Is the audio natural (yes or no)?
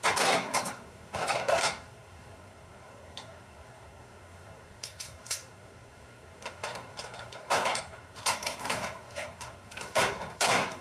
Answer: no